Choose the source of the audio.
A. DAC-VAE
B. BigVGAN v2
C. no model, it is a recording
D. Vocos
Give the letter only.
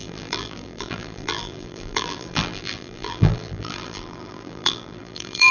B